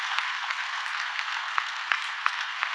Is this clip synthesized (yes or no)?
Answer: yes